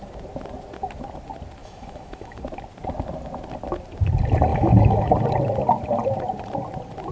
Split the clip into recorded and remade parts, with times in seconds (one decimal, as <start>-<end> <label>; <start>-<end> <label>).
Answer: 0.0-1.6 recorded; 1.6-2.4 remade; 2.4-4.5 recorded; 4.5-5.1 remade; 5.1-7.1 recorded